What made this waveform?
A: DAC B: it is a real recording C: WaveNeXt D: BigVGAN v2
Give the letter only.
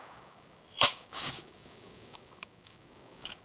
A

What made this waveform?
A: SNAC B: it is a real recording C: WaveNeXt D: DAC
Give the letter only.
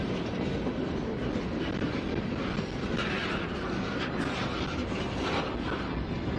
B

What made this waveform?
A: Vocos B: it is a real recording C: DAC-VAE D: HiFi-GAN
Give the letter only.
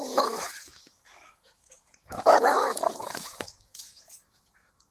C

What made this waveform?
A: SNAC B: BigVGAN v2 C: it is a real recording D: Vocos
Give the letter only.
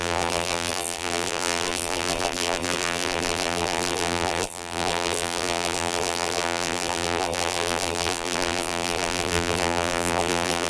B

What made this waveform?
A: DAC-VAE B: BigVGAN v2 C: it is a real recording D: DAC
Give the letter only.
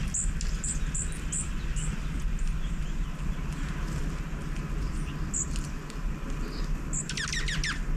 C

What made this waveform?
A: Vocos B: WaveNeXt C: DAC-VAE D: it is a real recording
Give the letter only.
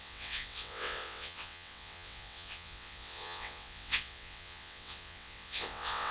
B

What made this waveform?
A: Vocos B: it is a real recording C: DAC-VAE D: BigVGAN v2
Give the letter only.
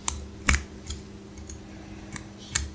B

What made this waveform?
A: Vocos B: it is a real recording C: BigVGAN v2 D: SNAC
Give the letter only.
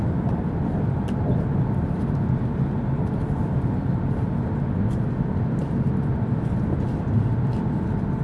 B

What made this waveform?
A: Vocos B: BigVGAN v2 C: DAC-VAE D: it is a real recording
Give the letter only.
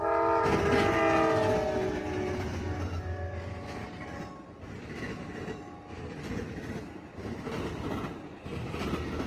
D